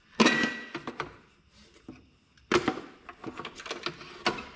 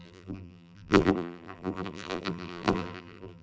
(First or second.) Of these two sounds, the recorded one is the first